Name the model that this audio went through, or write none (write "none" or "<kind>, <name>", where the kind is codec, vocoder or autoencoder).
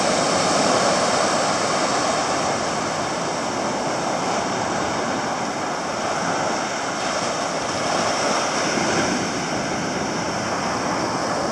none